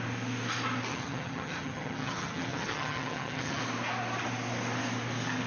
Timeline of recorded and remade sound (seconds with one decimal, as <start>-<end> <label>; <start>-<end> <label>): 0.0-0.9 recorded; 0.9-3.6 remade; 3.6-5.5 recorded